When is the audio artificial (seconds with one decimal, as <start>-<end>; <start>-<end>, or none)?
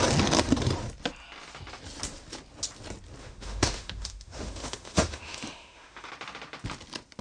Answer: 3.2-6.1